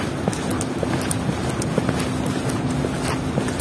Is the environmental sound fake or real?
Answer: real